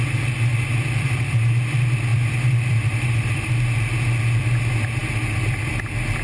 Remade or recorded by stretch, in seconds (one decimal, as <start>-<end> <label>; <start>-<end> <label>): 0.0-0.5 recorded; 0.5-1.4 remade; 1.4-2.1 recorded; 2.1-3.5 remade; 3.5-6.2 recorded